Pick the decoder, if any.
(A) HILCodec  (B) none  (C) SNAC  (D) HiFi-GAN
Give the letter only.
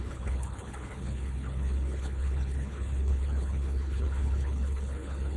A